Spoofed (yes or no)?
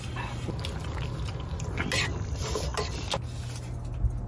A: no